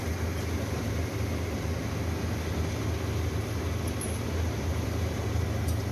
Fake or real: real